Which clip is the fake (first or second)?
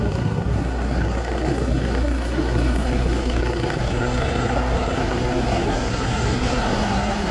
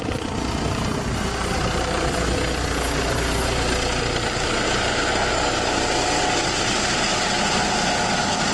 first